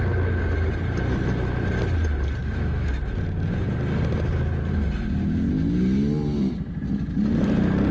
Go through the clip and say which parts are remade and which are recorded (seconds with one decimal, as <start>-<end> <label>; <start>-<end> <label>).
0.0-2.4 recorded; 2.4-3.0 remade; 3.0-7.9 recorded